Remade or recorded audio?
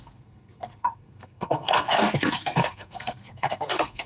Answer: remade